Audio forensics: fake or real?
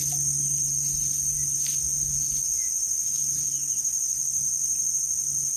real